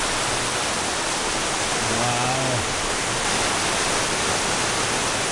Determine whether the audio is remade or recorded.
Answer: recorded